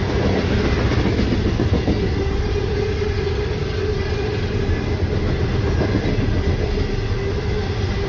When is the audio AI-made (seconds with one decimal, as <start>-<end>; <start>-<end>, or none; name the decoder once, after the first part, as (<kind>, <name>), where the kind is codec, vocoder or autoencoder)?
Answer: none